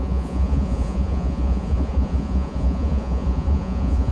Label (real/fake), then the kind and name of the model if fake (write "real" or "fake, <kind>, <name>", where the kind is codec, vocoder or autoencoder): fake, vocoder, Vocos